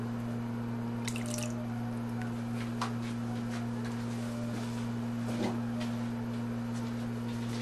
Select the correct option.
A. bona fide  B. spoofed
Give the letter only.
A